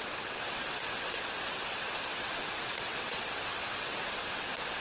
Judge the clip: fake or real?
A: fake